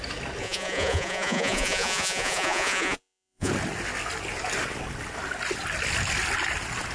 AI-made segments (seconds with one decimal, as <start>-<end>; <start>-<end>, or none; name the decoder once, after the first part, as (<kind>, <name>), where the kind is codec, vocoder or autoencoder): 0.4-3.5 (vocoder, Vocos)